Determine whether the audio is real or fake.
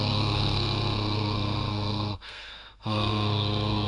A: fake